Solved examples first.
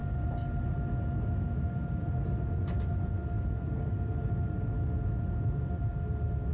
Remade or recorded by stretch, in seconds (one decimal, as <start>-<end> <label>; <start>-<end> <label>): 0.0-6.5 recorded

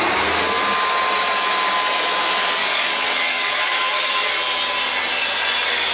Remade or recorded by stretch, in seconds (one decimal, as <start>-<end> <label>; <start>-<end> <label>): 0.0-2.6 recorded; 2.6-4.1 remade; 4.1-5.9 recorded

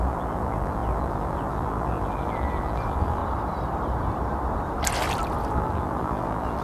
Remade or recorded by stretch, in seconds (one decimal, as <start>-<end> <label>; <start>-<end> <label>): 0.0-3.2 remade; 3.2-5.5 recorded; 5.5-6.6 remade

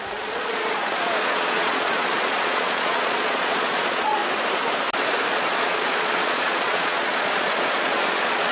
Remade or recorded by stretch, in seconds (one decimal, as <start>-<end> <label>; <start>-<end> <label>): 0.0-4.2 remade; 4.2-5.3 recorded; 5.3-8.5 remade